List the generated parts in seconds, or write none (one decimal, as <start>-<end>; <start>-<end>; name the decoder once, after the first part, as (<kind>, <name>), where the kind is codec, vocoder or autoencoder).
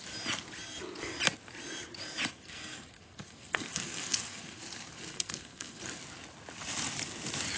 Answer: 2.3-4.6 (codec, SNAC); 5.1-5.8